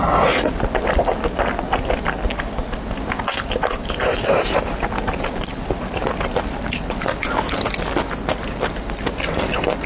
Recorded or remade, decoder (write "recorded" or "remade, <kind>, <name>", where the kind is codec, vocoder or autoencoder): recorded